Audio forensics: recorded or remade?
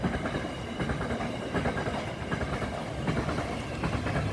recorded